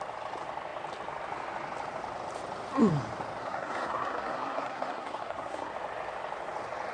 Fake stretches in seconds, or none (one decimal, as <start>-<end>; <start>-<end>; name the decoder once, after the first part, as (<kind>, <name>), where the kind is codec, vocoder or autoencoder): 3.4-5.7 (codec, SNAC)